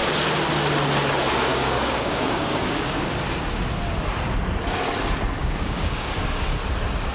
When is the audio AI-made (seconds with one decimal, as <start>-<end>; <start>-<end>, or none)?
1.5-3.1; 5.4-6.6